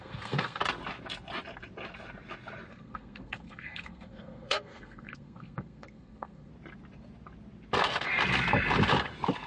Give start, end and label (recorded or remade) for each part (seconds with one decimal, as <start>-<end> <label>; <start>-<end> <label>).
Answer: 0.0-0.6 remade; 0.6-2.7 recorded; 2.7-6.5 remade; 6.5-9.5 recorded